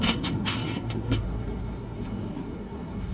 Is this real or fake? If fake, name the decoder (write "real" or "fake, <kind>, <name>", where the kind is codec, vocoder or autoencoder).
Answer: fake, codec, SNAC